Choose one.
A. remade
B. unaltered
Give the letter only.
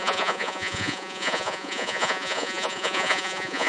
A